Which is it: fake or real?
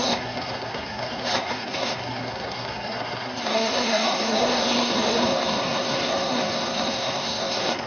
fake